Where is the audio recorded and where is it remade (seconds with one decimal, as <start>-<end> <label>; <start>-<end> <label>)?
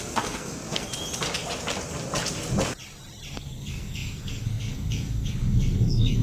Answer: 0.0-0.9 remade; 0.9-3.3 recorded; 3.3-6.2 remade